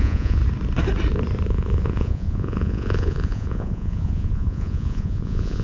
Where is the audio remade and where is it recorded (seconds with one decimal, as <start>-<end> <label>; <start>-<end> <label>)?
0.0-0.4 remade; 0.4-1.5 recorded; 1.5-5.6 remade